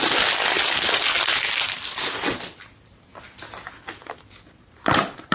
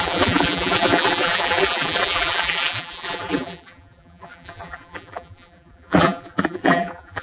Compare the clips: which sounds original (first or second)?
first